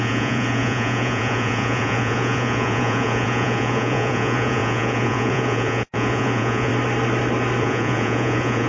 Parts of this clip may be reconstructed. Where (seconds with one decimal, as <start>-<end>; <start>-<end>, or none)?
0.0-6.7; 7.6-8.7